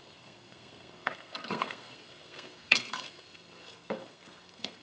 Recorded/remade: remade